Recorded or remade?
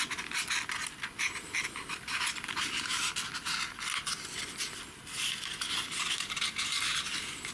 recorded